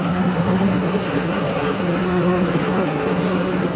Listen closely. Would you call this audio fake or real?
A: fake